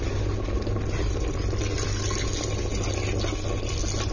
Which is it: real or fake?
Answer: real